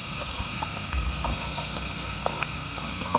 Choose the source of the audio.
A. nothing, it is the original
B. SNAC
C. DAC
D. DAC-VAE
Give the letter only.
B